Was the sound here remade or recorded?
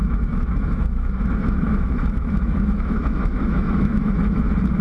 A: remade